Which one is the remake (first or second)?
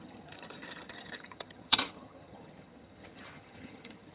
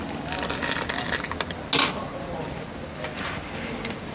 first